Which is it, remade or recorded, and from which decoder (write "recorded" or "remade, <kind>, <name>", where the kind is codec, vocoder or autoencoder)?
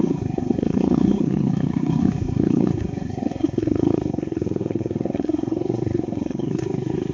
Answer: remade, codec, SNAC